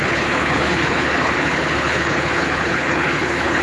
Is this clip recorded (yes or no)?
no